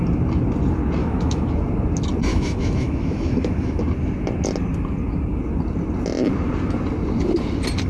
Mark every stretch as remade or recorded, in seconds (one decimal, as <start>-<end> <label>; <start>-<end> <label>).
0.0-1.0 recorded; 1.0-1.5 remade; 1.5-2.3 recorded; 2.3-3.8 remade; 3.8-7.9 recorded